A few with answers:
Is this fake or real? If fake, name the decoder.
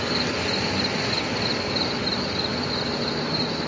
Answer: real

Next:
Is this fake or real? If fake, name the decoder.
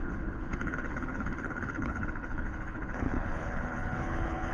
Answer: fake, codec, HILCodec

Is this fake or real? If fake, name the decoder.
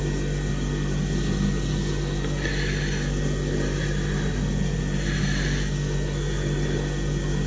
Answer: real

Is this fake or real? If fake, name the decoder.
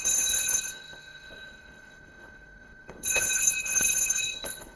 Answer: fake, codec, HILCodec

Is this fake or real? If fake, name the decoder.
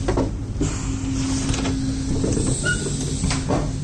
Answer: real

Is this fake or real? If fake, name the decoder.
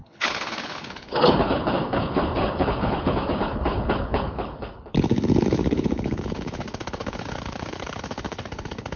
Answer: fake, codec, HILCodec